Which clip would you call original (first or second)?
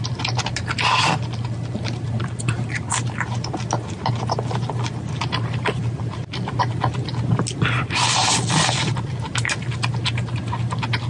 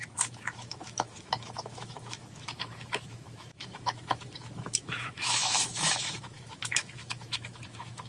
first